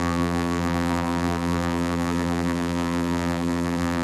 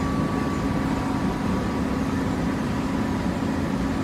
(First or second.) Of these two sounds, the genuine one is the second